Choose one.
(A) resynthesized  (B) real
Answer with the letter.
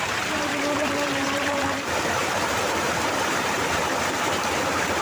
A